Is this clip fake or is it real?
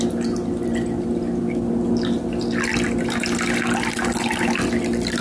real